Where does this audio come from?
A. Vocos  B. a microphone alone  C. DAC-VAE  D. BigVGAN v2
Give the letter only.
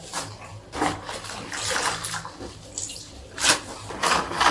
B